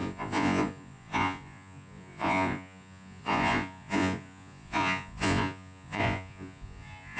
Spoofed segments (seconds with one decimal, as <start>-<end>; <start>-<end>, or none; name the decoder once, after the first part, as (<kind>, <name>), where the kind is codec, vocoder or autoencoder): 0.0-7.2 (vocoder, Vocos)

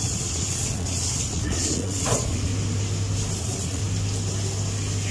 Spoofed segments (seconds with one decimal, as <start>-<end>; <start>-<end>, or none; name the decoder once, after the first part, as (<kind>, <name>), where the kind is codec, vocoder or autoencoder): 0.0-2.5 (vocoder, Vocos); 3.4-3.8

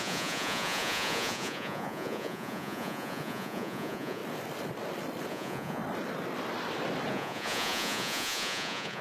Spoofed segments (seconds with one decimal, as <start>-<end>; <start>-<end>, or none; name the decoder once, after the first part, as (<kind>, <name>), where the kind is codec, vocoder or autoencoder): 0.0-4.2 (vocoder, Vocos); 5.3-5.8; 7.1-9.0

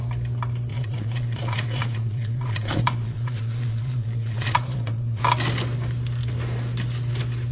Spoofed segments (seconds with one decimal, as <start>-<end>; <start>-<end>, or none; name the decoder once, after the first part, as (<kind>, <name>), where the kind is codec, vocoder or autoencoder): 0.7-5.2 (vocoder, Vocos)

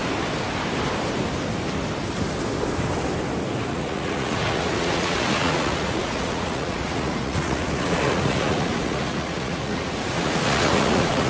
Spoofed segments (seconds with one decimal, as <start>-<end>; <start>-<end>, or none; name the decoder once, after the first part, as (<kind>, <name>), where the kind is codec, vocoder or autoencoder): 3.7-11.3 (vocoder, Vocos)

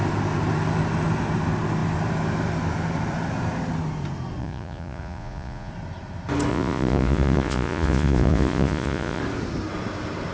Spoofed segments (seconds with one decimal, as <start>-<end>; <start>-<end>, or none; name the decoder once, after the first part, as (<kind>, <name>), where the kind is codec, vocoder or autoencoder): 4.4-5.7 (vocoder, Vocos); 6.5-9.2

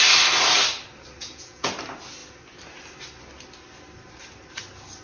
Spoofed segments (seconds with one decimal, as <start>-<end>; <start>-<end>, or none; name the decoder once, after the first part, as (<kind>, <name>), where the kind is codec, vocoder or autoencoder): 1.2-1.7 (vocoder, Vocos)